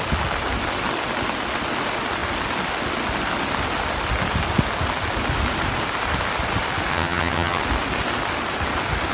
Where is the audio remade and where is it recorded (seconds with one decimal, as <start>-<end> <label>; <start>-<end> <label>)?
0.0-6.9 recorded; 6.9-7.6 remade; 7.6-9.1 recorded